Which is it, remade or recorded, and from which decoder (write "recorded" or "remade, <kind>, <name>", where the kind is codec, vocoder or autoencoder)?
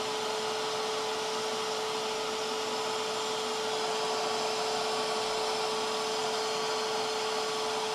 recorded